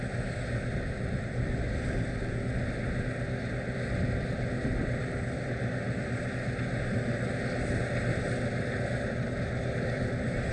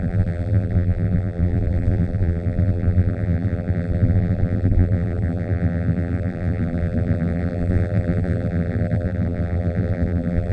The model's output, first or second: second